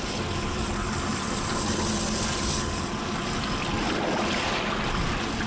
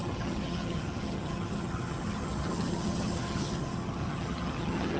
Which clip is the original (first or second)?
first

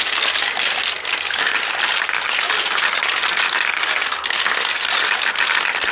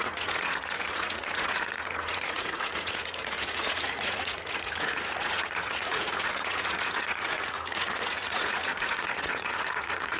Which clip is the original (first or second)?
first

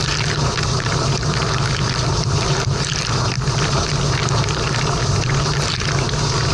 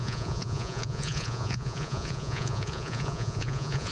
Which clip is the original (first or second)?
first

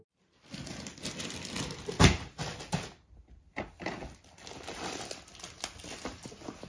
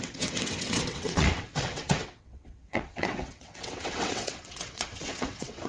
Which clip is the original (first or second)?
first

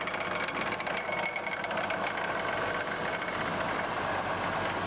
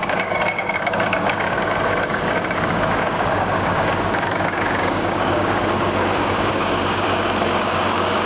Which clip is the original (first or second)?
first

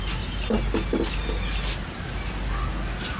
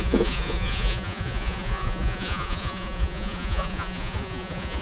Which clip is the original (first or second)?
first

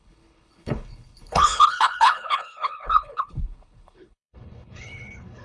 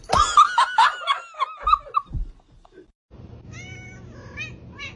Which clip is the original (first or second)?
second